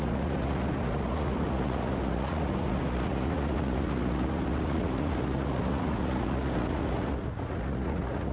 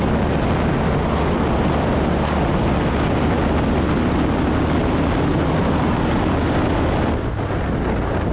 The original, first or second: second